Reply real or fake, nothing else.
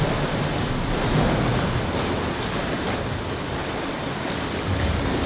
real